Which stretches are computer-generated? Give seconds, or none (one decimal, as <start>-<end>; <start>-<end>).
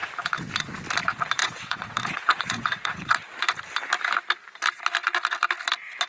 1.4-3.2